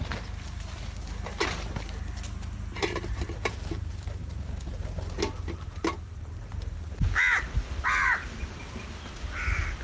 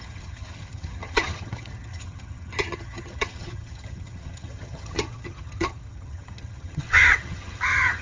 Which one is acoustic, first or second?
first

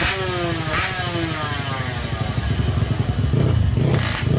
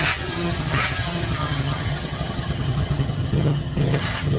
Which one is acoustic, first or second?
first